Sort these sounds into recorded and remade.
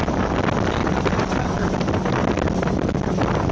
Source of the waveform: recorded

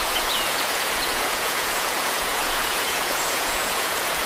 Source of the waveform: remade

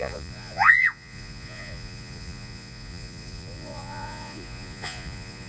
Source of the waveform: remade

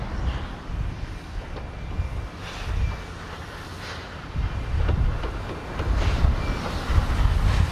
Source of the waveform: recorded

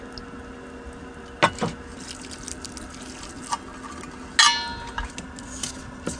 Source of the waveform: recorded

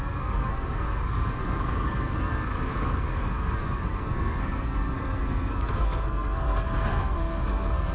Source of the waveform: remade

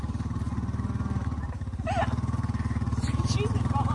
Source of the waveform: recorded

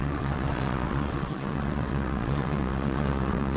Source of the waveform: remade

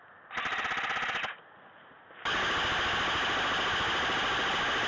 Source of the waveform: recorded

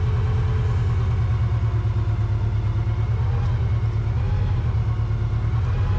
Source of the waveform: recorded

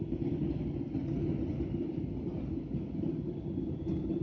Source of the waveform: recorded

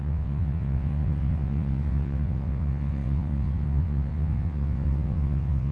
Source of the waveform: remade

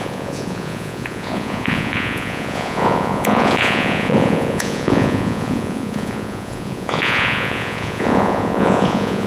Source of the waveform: remade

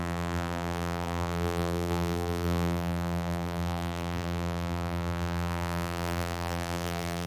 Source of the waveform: remade